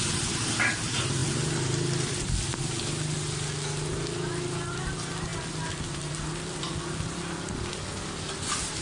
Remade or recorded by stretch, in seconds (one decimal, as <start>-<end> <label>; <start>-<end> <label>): 0.0-8.8 recorded